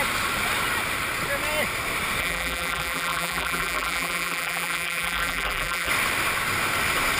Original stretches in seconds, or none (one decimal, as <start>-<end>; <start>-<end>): 0.0-2.2; 5.9-7.2